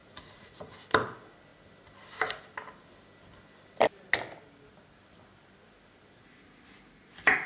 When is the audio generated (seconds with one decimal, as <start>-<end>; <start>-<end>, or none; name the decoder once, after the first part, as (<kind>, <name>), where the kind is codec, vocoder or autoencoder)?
0.0-0.7 (vocoder, Vocos)

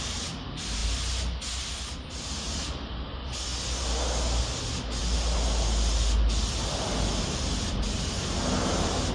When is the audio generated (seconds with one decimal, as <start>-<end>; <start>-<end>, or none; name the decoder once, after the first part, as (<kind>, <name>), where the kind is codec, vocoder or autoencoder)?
none

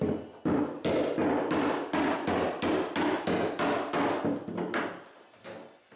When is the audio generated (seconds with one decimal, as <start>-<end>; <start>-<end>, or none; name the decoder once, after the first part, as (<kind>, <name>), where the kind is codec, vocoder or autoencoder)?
none

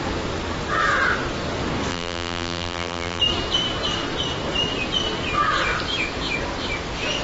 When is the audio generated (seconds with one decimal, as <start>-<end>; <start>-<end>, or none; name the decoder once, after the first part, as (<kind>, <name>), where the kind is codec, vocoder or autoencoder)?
1.9-3.2 (vocoder, BigVGAN v2)